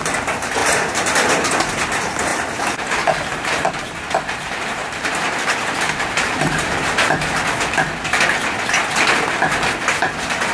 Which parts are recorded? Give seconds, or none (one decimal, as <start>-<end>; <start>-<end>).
0.0-0.6; 1.7-2.3; 6.9-10.5